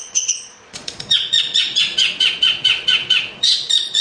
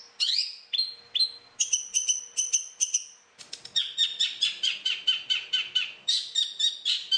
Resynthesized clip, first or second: first